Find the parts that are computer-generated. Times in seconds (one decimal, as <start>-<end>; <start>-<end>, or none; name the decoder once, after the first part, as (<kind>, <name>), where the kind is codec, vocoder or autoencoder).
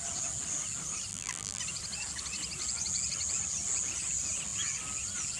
1.1-1.6 (vocoder, BigVGAN v2)